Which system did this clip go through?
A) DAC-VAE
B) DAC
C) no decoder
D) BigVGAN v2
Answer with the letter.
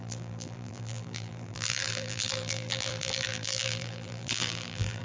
D